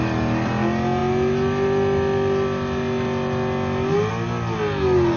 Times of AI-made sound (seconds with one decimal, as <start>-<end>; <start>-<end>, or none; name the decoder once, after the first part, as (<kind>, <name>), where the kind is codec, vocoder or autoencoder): none